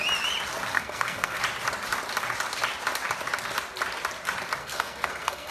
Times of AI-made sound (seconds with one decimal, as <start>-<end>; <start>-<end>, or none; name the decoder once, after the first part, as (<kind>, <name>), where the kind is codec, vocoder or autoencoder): 0.7-1.4 (codec, SNAC); 4.6-5.5